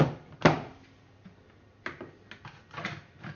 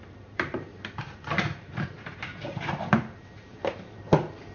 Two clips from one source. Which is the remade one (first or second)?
second